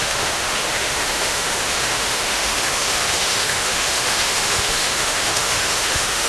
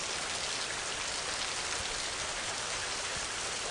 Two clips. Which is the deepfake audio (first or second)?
first